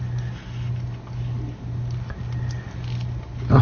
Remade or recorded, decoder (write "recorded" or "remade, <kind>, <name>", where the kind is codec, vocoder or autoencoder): recorded